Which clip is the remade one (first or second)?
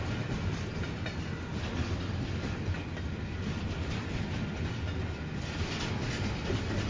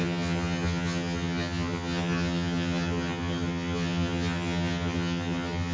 second